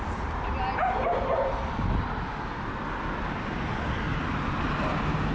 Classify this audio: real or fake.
real